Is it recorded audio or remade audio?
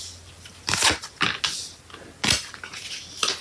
recorded